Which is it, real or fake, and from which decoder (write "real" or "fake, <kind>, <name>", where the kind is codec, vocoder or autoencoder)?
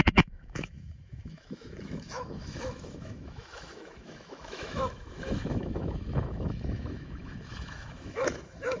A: fake, autoencoder, DAC-VAE